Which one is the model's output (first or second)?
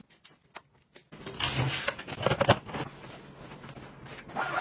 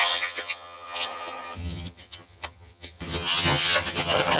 second